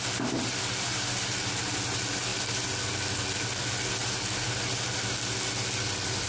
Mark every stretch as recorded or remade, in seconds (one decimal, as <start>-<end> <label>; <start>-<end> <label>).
0.0-6.3 recorded